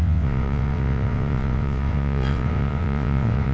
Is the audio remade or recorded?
remade